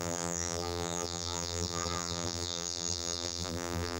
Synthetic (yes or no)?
yes